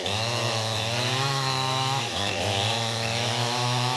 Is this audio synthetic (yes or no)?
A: yes